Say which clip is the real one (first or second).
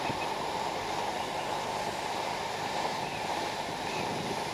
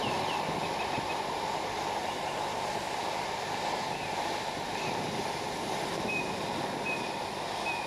second